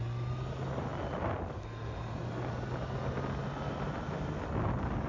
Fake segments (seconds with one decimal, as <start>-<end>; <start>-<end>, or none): none